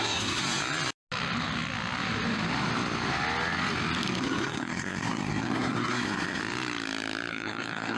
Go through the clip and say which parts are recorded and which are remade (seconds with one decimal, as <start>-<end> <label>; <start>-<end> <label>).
0.0-0.4 remade; 0.4-4.2 recorded; 4.2-6.4 remade; 6.4-7.3 recorded; 7.3-8.0 remade